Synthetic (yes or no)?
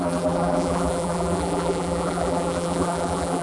yes